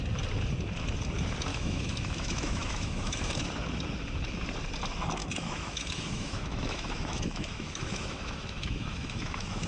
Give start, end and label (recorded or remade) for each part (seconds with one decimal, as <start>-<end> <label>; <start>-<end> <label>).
0.0-1.5 recorded; 1.5-3.3 remade; 3.3-5.2 recorded; 5.2-9.7 remade